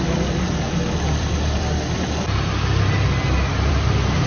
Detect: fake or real fake